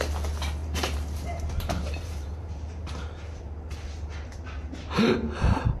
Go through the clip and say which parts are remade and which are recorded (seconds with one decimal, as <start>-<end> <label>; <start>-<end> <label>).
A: 0.0-0.6 recorded; 0.6-3.4 remade; 3.4-5.8 recorded